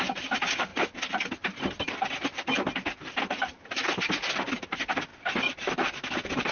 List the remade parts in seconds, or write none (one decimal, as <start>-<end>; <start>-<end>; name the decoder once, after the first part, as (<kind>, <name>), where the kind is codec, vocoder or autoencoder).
0.0-0.7 (vocoder, BigVGAN v2); 4.5-5.1; 5.7-6.5